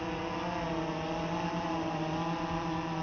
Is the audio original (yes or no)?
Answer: yes